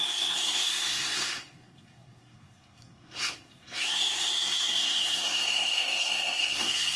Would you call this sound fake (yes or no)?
yes